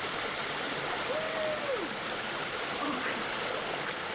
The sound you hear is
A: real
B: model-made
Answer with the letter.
A